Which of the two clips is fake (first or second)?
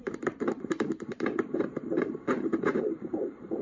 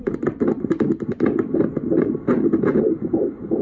first